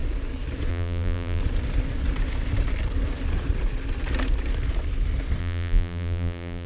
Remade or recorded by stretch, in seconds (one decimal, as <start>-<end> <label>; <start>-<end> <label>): 0.0-0.7 recorded; 0.7-1.4 remade; 1.4-5.4 recorded; 5.4-6.7 remade